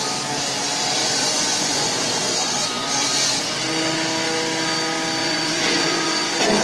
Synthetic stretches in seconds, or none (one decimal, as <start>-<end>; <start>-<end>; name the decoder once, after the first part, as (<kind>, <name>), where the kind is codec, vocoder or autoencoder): 1.0-3.6 (vocoder, Vocos); 5.2-6.6